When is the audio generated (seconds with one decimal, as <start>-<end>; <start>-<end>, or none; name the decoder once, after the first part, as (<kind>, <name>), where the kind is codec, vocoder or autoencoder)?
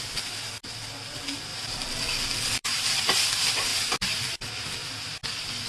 1.5-2.0 (vocoder, BigVGAN v2); 2.6-3.2